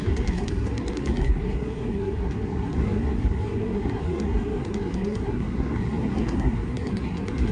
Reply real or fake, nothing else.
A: fake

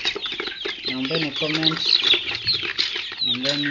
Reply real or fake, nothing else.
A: real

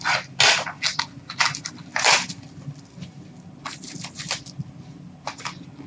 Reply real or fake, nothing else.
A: real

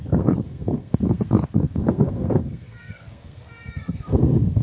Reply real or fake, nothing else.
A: fake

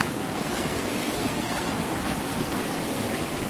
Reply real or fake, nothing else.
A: fake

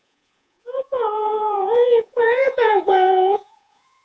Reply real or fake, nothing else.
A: fake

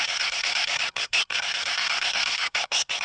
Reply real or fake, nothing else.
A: fake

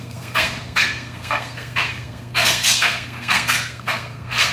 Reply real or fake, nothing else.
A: fake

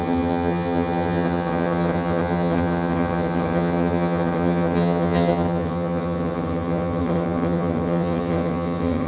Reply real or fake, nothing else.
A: fake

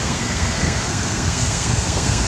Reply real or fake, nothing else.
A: fake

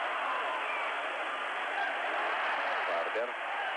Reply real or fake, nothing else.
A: real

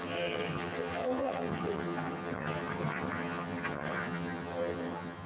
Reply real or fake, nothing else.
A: fake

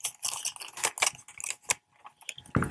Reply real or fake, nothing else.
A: real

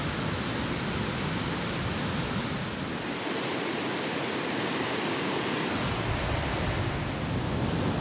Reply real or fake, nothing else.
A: real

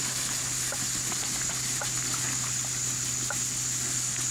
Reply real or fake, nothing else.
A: real